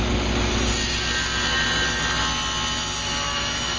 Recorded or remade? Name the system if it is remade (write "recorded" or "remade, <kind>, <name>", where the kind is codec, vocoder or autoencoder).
recorded